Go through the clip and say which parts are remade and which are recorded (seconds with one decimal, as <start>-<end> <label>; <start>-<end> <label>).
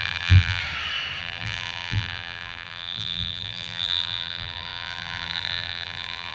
0.0-0.6 remade; 0.6-1.2 recorded; 1.2-6.3 remade